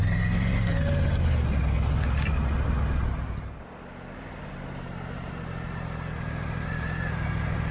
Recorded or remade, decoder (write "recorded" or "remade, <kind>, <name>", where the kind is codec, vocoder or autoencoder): recorded